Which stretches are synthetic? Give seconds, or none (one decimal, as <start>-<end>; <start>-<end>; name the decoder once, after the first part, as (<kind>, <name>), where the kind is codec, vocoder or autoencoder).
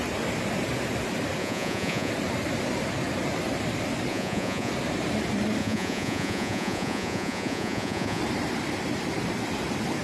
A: 1.4-2.1 (vocoder, Vocos); 4.1-4.7; 5.6-8.2